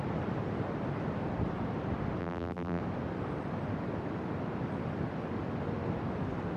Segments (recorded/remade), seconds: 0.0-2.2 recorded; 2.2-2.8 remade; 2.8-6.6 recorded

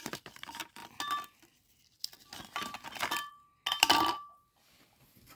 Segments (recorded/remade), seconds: 0.0-5.3 recorded

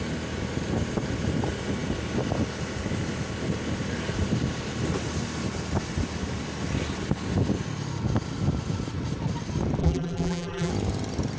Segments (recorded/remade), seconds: 0.0-9.8 recorded; 9.8-10.7 remade; 10.7-11.4 recorded

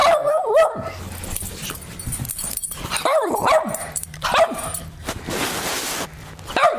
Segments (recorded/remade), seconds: 0.0-1.0 remade; 1.0-1.6 recorded; 1.6-5.7 remade; 5.7-6.8 recorded

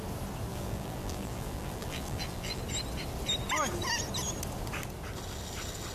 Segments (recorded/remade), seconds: 0.0-0.5 recorded; 0.5-2.6 remade; 2.6-5.9 recorded

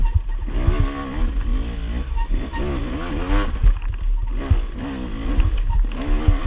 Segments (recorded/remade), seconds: 0.0-6.5 recorded

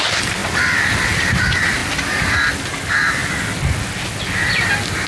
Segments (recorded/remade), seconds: 0.0-0.4 recorded; 0.4-1.4 remade; 1.4-1.8 recorded; 1.8-2.5 remade; 2.5-5.1 recorded